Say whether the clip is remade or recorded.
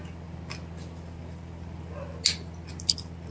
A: recorded